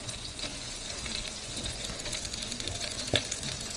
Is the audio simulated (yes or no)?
yes